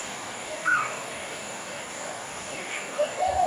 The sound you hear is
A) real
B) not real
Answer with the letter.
B